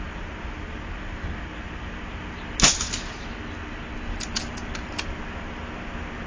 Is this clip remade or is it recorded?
recorded